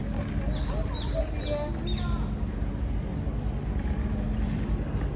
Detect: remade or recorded recorded